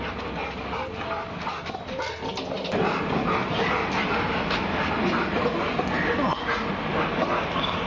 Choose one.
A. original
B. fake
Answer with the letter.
A